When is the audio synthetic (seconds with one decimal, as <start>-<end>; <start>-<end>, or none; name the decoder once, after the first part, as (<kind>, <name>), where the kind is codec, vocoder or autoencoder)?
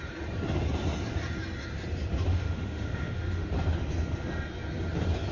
2.3-3.5 (autoencoder, DAC-VAE)